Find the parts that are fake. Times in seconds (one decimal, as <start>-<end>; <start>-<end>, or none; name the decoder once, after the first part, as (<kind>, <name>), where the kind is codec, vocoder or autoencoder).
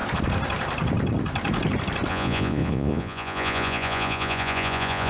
2.1-5.1 (vocoder, Vocos)